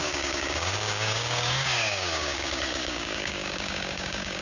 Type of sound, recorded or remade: remade